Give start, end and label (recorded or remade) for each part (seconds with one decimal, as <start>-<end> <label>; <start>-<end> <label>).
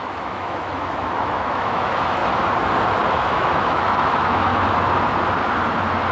0.0-2.2 remade; 2.2-3.1 recorded; 3.1-4.5 remade; 4.5-6.1 recorded